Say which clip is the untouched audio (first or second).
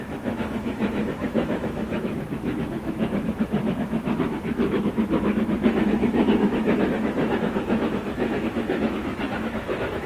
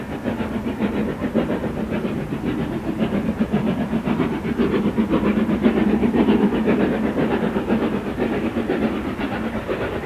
second